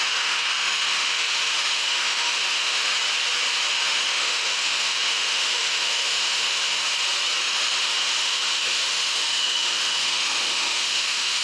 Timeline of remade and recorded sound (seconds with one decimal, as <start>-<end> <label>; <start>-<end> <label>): 0.0-2.9 remade; 2.9-3.7 recorded; 3.7-6.8 remade; 6.8-7.4 recorded; 7.4-11.4 remade